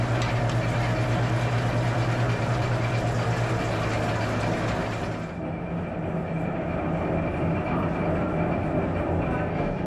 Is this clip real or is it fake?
real